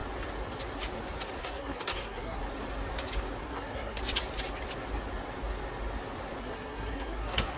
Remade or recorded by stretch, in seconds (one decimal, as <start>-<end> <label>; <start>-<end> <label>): 0.0-1.4 recorded; 1.4-2.4 remade; 2.4-3.4 recorded; 3.4-4.0 remade; 4.0-6.4 recorded; 6.4-7.6 remade